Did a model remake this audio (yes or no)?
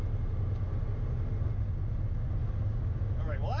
no